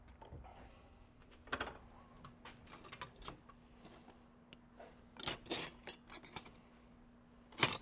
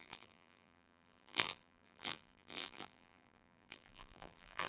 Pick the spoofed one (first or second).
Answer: second